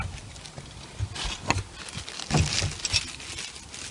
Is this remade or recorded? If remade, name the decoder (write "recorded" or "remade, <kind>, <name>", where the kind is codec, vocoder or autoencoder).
recorded